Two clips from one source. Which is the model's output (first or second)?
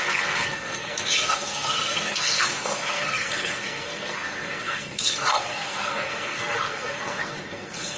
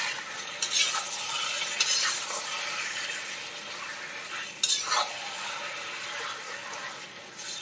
first